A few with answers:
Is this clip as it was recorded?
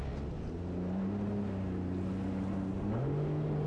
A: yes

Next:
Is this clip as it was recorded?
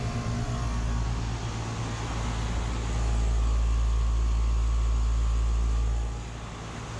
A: yes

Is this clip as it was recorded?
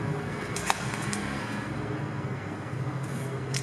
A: no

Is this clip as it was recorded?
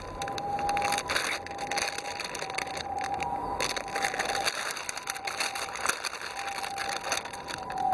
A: yes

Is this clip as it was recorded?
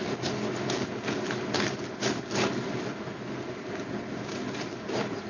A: yes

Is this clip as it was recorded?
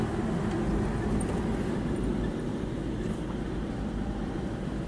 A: yes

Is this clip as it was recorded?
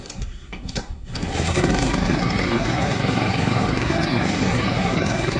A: no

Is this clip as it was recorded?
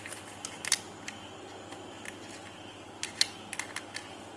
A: yes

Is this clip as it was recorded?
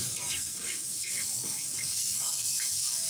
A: no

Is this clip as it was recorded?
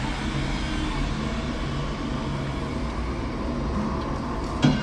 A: yes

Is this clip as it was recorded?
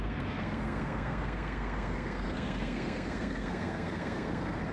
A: no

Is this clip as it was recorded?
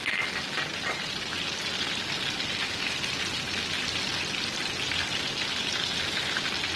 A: yes